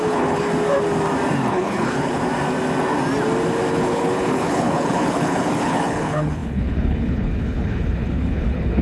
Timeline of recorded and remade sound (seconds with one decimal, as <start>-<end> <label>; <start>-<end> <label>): 0.0-0.5 remade; 0.5-1.5 recorded; 1.5-2.2 remade; 2.2-3.7 recorded; 3.7-8.8 remade